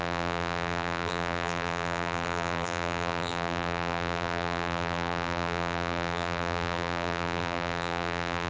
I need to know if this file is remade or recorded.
remade